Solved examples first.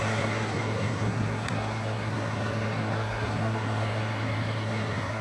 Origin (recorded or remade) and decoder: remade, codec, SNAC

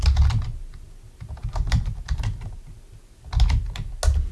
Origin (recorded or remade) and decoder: recorded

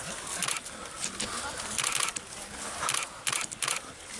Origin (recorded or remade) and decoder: recorded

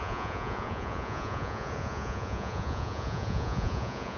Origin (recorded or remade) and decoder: remade, vocoder, Vocos